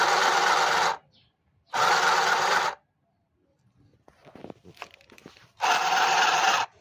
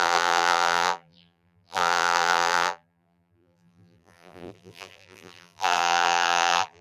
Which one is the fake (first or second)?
second